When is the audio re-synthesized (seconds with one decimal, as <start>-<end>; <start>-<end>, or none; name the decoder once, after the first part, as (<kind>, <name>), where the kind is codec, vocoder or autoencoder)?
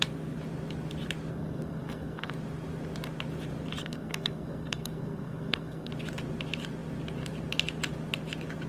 1.3-2.3 (codec, SNAC); 3.8-5.9